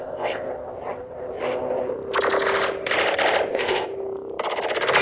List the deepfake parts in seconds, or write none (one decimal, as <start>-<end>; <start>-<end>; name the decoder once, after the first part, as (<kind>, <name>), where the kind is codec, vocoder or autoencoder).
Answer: 0.0-0.5 (codec, ZipCodec); 3.5-3.9